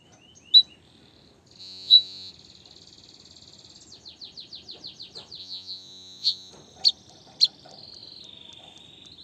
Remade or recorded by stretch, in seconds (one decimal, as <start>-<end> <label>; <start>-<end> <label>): 0.0-1.6 recorded; 1.6-2.3 remade; 2.3-5.4 recorded; 5.4-6.5 remade; 6.5-9.2 recorded